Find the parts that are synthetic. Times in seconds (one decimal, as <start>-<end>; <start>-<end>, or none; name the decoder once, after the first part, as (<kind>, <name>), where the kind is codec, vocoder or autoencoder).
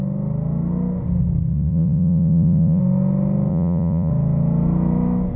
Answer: 1.5-2.8 (vocoder, Vocos); 3.5-4.1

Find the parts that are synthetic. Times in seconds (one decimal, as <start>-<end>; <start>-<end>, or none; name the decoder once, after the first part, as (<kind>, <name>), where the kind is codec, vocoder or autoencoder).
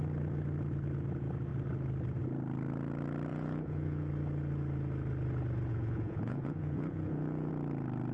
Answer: 3.3-4.1 (vocoder, Vocos); 5.7-7.5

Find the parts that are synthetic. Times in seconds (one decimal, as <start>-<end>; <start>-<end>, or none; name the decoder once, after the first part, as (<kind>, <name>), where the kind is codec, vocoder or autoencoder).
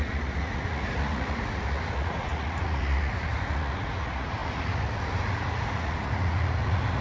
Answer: 0.0-7.0 (vocoder, Vocos)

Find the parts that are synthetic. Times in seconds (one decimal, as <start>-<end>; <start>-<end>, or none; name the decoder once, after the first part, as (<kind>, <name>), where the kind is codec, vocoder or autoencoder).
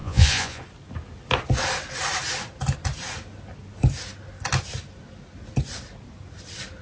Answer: 0.0-0.6 (vocoder, Vocos)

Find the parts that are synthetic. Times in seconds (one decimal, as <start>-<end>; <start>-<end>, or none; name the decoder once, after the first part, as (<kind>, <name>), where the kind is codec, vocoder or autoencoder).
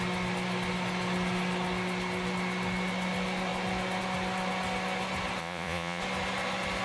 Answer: 5.4-6.0 (vocoder, Vocos)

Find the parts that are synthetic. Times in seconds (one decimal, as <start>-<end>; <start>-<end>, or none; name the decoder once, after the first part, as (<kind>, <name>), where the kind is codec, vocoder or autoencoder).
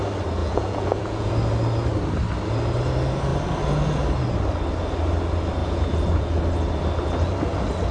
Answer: 0.4-1.3 (vocoder, Vocos); 5.6-6.4